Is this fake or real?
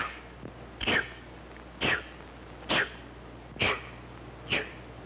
real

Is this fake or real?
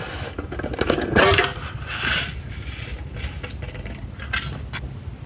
real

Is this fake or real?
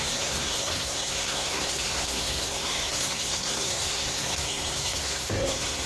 fake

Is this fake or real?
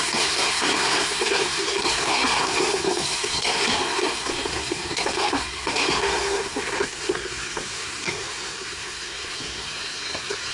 fake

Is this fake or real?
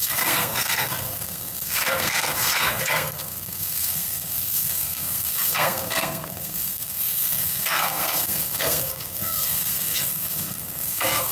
fake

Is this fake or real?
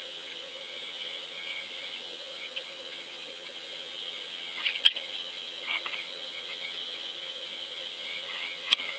fake